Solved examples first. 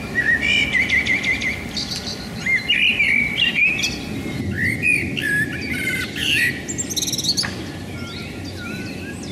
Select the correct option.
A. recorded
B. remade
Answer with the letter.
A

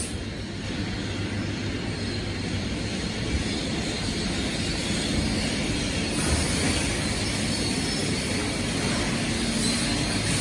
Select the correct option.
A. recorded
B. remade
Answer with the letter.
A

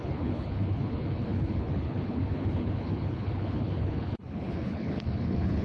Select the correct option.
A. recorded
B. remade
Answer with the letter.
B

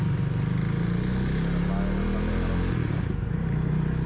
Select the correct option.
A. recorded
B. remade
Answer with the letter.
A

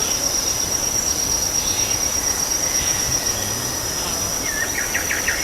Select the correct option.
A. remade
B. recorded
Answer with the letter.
B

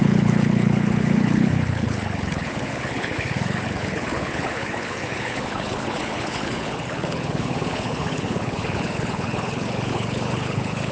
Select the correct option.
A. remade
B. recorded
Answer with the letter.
A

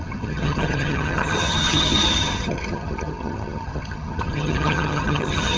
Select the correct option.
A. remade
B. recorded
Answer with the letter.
A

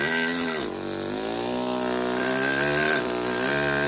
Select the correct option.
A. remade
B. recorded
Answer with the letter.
B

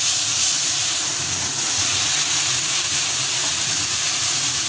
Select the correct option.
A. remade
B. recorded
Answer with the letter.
A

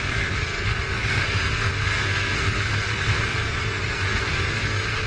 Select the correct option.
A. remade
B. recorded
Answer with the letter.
A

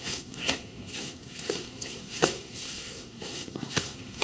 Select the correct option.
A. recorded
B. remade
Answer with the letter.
B